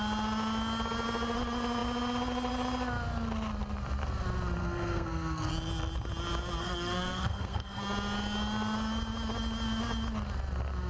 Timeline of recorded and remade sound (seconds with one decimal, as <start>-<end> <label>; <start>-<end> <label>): 0.0-4.6 recorded; 4.6-5.5 remade; 5.5-6.6 recorded; 6.6-7.8 remade; 7.8-10.9 recorded